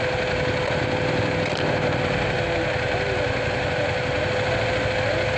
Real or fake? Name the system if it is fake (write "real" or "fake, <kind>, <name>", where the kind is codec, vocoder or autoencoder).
real